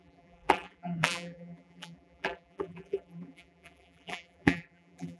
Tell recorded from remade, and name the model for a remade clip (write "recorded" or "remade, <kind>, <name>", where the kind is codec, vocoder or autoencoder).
remade, vocoder, BigVGAN v2